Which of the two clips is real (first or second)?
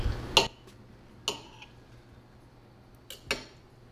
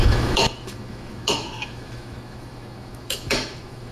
first